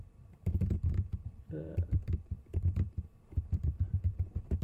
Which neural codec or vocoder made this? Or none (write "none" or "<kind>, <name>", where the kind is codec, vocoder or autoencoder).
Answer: vocoder, BigVGAN v2